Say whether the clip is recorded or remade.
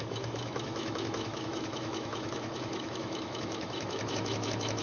remade